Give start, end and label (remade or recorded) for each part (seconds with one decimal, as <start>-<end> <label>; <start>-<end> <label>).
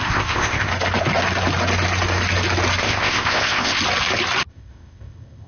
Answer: 0.0-0.7 remade; 0.7-2.8 recorded; 2.8-3.8 remade; 3.8-4.5 recorded; 4.5-5.5 remade